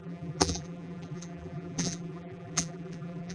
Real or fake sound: fake